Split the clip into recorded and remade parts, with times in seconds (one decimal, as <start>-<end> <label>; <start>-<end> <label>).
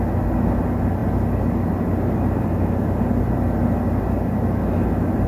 0.0-5.3 recorded